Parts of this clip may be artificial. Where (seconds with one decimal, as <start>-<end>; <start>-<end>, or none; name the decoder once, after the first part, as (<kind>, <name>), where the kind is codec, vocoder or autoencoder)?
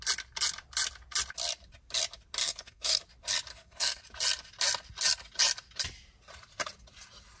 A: 2.4-3.0 (codec, SNAC); 3.5-4.0